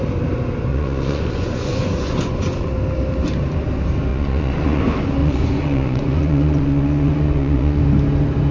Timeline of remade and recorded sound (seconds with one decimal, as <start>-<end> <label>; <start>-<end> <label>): 0.0-0.7 recorded; 0.7-2.7 remade; 2.7-4.1 recorded; 4.1-4.8 remade; 4.8-5.2 recorded; 5.2-7.8 remade; 7.8-8.5 recorded